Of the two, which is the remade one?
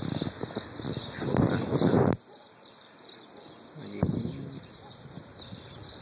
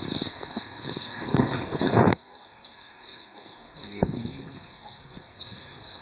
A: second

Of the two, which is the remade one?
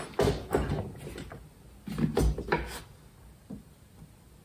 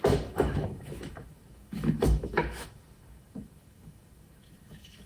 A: second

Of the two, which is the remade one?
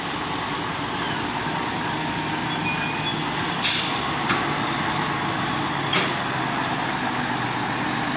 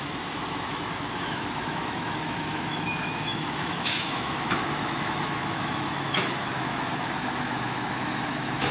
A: second